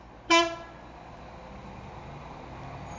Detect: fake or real real